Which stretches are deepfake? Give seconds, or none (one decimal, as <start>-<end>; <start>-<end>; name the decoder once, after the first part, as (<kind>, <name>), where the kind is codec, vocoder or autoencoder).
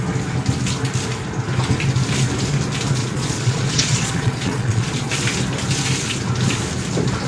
3.0-5.1 (vocoder, Vocos)